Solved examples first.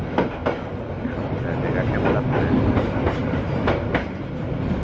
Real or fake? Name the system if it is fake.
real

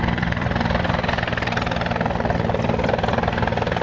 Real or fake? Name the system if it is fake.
real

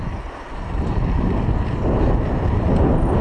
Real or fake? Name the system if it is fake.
real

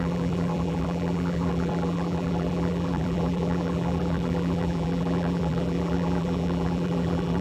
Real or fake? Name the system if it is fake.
fake, vocoder, BigVGAN v2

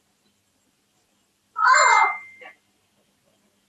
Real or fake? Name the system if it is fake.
real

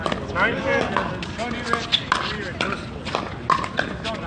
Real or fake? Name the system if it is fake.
real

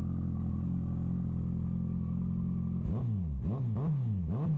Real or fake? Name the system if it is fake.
real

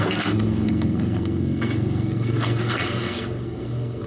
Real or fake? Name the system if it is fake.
fake, codec, SNAC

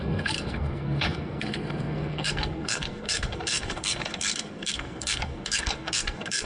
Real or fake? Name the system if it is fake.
fake, codec, SNAC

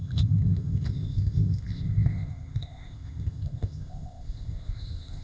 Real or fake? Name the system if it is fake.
fake, codec, ZipCodec